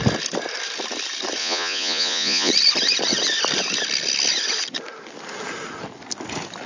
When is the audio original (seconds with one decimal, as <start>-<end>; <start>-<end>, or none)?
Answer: 0.0-1.4; 2.5-6.7